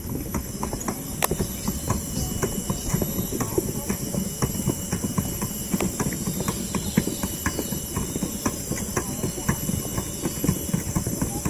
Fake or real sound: real